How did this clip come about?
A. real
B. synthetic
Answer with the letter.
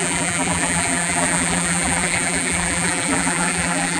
B